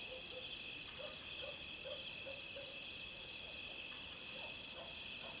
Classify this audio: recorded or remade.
recorded